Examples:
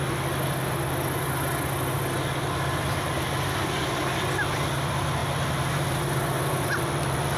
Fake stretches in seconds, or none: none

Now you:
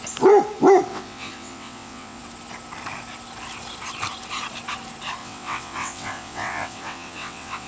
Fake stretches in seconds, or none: 0.9-2.2 (vocoder, WaveNeXt); 5.2-7.7

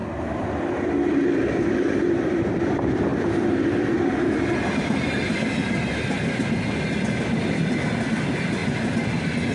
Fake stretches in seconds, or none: none

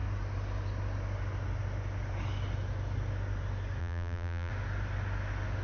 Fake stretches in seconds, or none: 3.8-4.5 (vocoder, BigVGAN v2)